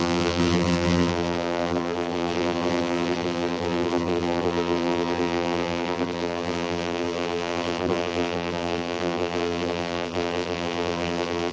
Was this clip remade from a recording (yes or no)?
yes